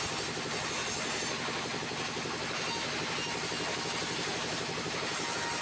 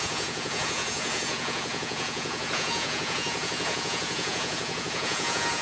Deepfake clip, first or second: second